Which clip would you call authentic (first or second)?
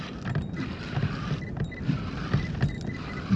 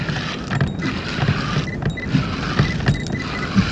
second